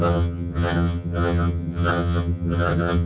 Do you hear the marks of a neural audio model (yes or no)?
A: yes